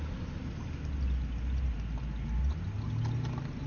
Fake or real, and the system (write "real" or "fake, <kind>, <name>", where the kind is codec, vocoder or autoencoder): real